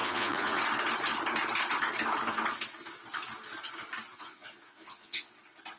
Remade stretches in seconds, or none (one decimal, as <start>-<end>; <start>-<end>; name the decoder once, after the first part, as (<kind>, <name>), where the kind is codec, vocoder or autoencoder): 0.0-0.6 (vocoder, Vocos); 4.1-5.3